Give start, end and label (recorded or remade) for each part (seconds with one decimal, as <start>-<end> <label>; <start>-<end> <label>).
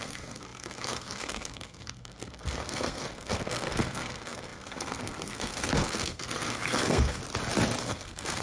0.0-7.2 remade; 7.2-7.8 recorded; 7.8-8.4 remade